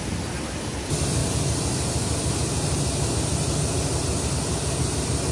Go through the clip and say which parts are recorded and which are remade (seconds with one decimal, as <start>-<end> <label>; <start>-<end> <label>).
0.0-5.3 recorded